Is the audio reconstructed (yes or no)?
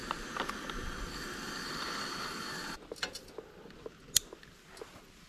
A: no